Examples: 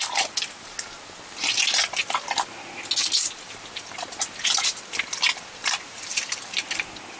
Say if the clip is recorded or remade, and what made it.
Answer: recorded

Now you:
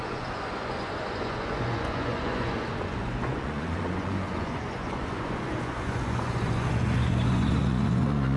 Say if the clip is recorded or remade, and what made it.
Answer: remade, vocoder, Vocos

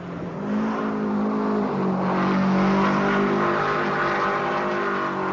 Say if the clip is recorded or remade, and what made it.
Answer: recorded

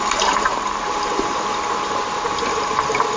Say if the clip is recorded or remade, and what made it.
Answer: recorded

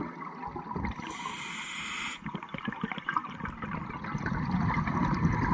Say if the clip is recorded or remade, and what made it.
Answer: recorded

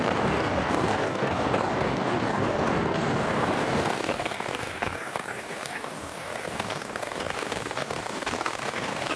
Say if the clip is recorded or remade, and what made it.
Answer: remade, codec, DAC